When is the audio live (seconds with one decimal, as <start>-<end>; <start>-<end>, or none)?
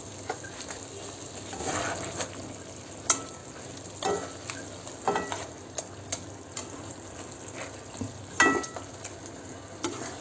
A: 0.0-10.2